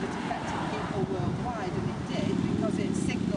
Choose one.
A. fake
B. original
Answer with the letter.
B